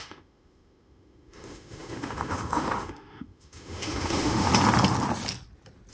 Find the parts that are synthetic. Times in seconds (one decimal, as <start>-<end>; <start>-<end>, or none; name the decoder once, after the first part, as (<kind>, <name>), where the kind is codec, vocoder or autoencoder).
0.0-4.5 (autoencoder, DAC-VAE)